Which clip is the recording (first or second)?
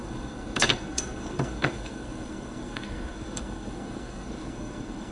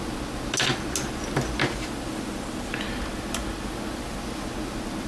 second